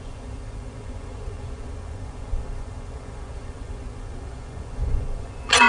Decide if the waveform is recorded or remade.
remade